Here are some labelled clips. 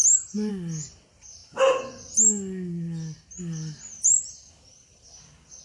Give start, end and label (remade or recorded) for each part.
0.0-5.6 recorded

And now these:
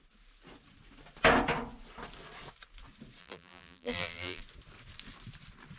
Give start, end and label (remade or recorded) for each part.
0.0-3.2 recorded; 3.2-4.4 remade; 4.4-5.8 recorded

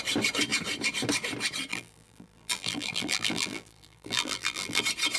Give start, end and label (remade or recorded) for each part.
0.0-1.7 recorded; 1.7-4.8 remade; 4.8-5.2 recorded

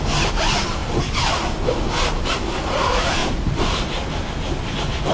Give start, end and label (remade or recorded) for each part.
0.0-3.2 recorded; 3.2-3.7 remade; 3.7-5.1 recorded